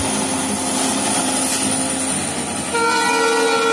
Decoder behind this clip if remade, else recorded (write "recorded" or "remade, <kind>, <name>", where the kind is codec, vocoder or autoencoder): recorded